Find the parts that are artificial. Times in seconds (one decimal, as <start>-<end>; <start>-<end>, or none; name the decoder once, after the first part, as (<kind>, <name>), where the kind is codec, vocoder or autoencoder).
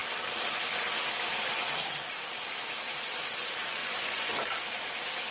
3.8-4.3 (vocoder, Vocos)